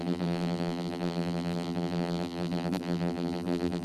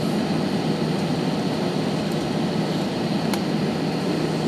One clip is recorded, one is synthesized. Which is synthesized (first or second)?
first